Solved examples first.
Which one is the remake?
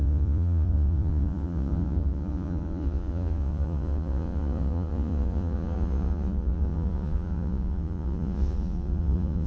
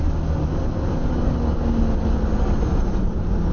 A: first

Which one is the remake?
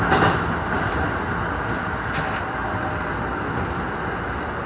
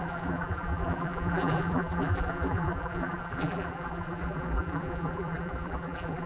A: second